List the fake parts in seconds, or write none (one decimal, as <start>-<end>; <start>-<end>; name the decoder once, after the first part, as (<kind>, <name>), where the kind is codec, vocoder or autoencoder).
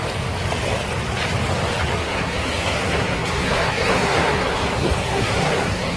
2.0-6.0 (codec, SNAC)